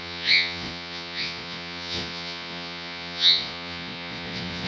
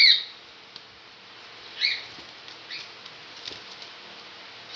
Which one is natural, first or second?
second